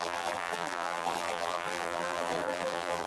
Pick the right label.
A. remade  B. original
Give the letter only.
A